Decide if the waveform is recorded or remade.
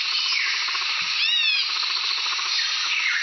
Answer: recorded